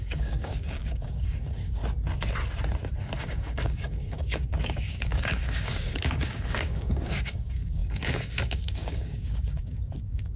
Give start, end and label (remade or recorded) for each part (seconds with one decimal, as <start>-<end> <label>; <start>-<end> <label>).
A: 0.0-1.8 remade; 1.8-3.2 recorded; 3.2-10.4 remade